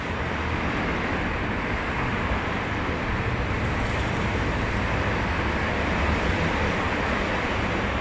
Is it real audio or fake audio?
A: real